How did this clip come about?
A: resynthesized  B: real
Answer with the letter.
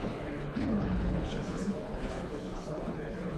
A